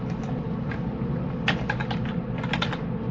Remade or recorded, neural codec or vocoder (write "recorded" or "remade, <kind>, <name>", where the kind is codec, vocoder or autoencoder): recorded